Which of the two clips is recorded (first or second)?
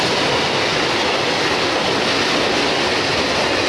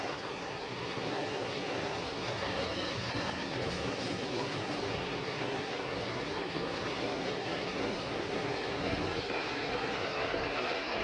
first